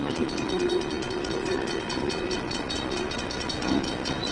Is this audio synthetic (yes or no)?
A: yes